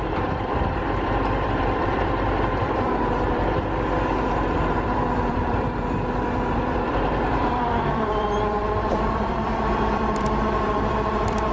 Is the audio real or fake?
fake